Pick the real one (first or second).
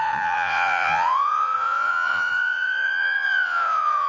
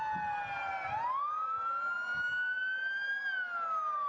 second